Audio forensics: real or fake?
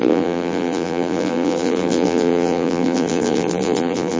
fake